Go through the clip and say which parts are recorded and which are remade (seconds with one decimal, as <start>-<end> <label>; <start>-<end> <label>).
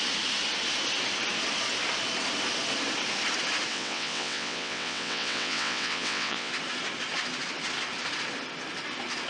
0.0-3.7 recorded; 3.7-6.5 remade; 6.5-9.3 recorded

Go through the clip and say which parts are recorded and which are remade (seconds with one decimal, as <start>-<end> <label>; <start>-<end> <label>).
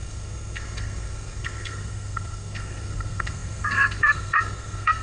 0.0-5.0 remade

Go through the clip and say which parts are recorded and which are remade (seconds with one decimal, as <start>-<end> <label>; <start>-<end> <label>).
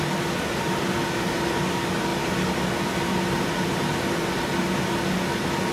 0.0-5.7 recorded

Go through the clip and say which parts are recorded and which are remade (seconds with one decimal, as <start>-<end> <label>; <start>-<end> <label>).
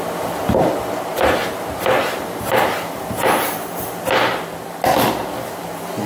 0.0-1.1 recorded; 1.1-2.5 remade; 2.5-6.1 recorded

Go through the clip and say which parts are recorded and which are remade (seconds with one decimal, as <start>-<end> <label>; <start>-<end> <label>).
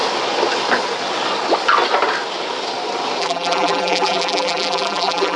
0.0-3.2 recorded; 3.2-5.4 remade